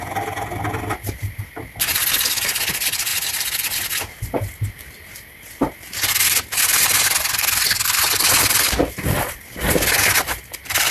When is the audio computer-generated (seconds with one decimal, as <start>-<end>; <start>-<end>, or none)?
none